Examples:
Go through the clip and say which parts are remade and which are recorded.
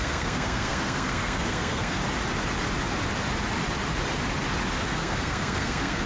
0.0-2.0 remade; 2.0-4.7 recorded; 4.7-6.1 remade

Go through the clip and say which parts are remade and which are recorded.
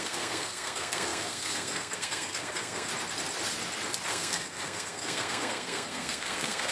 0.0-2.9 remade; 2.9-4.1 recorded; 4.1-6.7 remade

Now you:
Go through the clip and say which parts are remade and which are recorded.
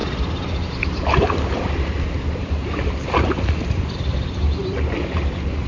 0.0-5.7 remade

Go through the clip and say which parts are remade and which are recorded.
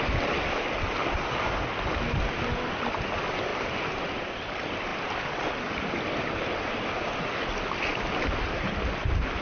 0.0-9.4 recorded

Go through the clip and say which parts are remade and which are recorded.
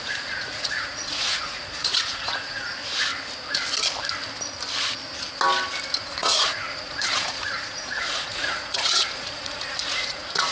0.0-2.8 remade; 2.8-6.0 recorded; 6.0-10.5 remade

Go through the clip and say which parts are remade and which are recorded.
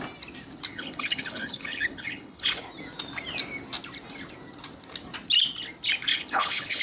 0.0-0.7 recorded; 0.7-2.5 remade; 2.5-6.1 recorded; 6.1-6.8 remade